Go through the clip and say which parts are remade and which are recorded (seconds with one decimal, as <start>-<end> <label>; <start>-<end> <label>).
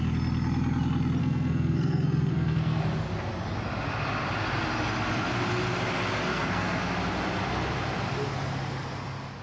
0.0-1.2 recorded; 1.2-2.8 remade; 2.8-6.3 recorded; 6.3-6.8 remade; 6.8-9.4 recorded